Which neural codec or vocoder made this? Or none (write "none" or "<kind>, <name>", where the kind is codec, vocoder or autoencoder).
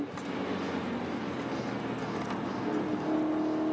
none